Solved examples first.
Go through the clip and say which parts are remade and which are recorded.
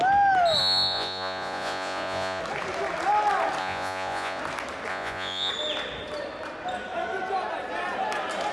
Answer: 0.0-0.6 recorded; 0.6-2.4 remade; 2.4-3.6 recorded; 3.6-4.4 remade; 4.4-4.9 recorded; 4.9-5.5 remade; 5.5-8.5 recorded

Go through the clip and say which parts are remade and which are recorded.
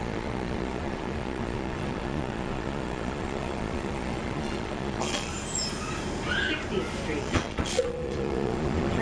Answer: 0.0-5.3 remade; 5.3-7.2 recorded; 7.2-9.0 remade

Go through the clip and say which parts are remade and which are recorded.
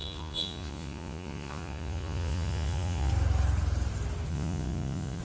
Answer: 0.0-3.1 remade; 3.1-4.3 recorded; 4.3-5.2 remade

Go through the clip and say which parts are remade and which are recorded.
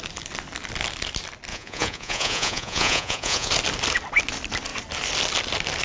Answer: 0.0-1.5 recorded; 1.5-3.5 remade; 3.5-5.8 recorded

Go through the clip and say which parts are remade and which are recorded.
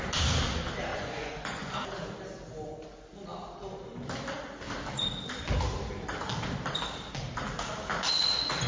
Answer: 0.0-0.9 recorded; 0.9-1.7 remade; 1.7-8.7 recorded